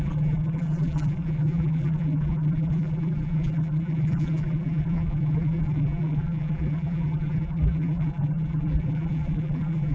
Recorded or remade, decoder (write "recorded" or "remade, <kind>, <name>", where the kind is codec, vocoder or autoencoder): remade, vocoder, BigVGAN v2